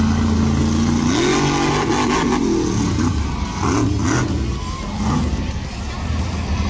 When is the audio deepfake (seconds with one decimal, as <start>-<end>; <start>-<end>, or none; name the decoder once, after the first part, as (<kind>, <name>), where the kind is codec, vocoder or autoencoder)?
none